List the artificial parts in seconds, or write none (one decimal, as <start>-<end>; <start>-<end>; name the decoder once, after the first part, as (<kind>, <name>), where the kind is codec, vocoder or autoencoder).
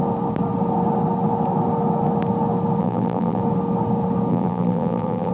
2.8-3.4 (vocoder, BigVGAN v2); 4.3-5.3